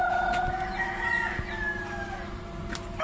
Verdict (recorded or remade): recorded